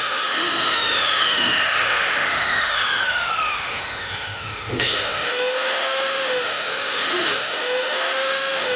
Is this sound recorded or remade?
remade